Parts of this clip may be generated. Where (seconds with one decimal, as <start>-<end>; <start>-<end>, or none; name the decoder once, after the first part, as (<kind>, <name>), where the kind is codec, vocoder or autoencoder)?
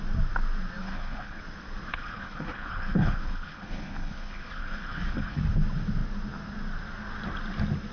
0.8-1.4 (codec, HILCodec); 1.9-5.4